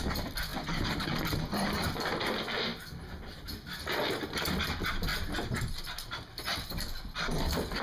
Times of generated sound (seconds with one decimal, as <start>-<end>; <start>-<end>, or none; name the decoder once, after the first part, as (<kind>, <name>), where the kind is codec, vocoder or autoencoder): 2.7-4.1 (vocoder, BigVGAN v2)